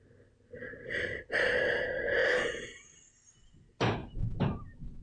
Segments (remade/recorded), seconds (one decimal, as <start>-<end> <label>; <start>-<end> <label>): 0.0-5.0 recorded